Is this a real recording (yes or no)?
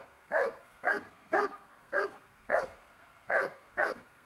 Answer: no